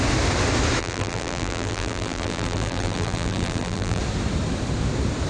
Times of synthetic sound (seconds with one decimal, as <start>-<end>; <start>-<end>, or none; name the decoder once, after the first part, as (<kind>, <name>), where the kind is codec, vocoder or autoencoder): 0.8-4.0 (vocoder, BigVGAN v2)